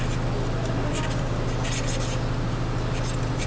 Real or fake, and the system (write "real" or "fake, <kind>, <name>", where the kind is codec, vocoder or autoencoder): real